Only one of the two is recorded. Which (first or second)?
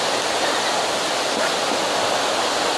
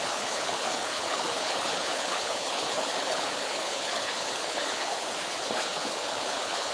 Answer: first